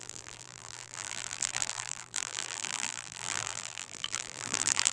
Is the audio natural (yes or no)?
no